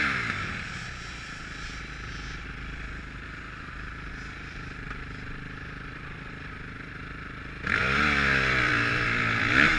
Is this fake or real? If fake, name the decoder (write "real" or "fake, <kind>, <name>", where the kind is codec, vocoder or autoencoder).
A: fake, vocoder, BigVGAN v2